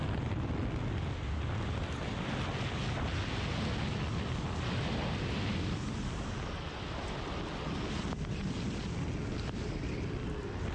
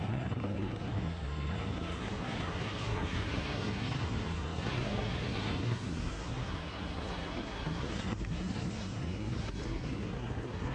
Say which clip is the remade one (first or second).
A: second